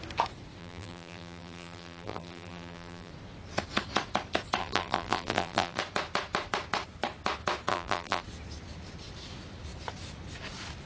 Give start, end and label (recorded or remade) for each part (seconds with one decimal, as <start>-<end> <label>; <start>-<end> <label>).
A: 0.0-0.6 recorded; 0.6-3.1 remade; 3.1-4.6 recorded; 4.6-5.8 remade; 5.8-7.7 recorded; 7.7-8.2 remade; 8.2-10.9 recorded